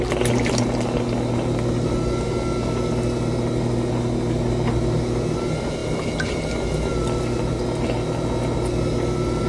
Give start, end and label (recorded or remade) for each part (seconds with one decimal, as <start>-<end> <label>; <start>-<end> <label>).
0.0-9.5 recorded